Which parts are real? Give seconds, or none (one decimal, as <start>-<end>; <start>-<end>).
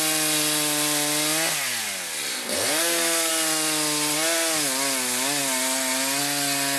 0.0-2.3; 3.3-6.8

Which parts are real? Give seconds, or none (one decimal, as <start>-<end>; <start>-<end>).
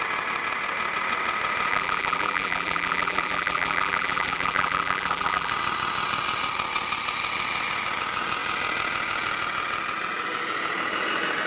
0.0-1.7; 5.5-11.5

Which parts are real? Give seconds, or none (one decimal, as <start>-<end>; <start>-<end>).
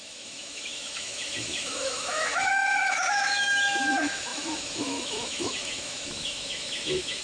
none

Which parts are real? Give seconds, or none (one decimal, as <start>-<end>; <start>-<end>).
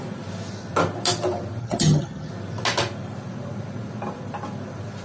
0.0-1.6; 2.3-5.0